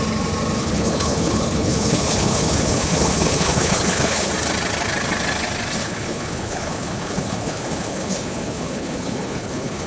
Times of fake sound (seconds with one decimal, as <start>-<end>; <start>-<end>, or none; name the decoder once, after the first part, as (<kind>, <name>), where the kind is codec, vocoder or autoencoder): 0.6-4.3 (codec, HILCodec); 5.8-9.9